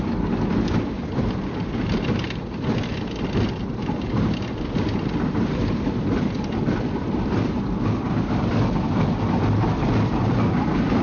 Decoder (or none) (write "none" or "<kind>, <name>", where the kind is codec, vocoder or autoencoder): vocoder, BigVGAN v2